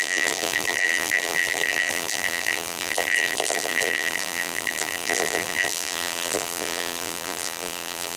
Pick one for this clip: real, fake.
fake